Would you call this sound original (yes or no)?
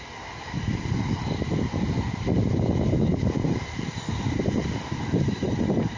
no